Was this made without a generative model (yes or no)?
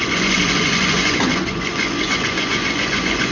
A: no